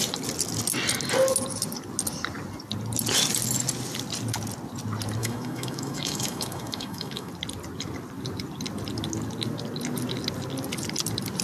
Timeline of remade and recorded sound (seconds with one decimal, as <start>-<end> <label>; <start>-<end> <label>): 0.0-5.2 recorded; 5.2-7.3 remade; 7.3-11.4 recorded